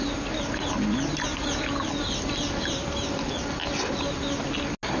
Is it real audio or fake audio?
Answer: real